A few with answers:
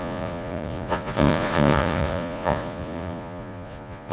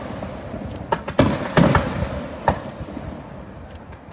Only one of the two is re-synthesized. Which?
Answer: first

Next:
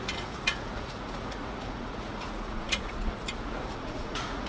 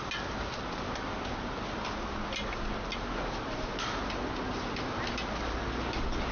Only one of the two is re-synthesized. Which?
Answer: first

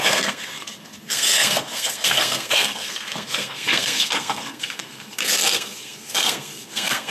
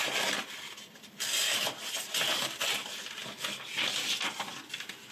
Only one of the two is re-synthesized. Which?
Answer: first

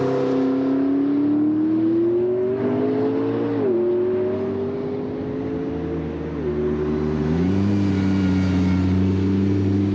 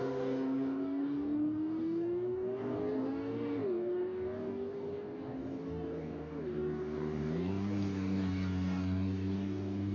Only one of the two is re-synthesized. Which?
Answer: second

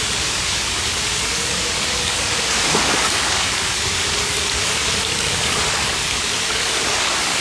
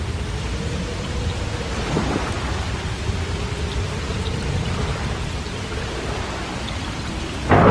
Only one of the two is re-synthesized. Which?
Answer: first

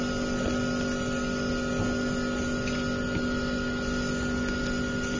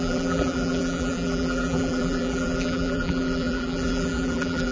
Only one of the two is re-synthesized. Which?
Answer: second